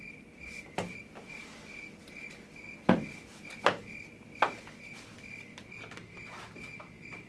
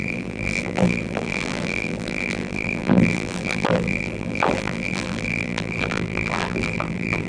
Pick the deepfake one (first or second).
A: second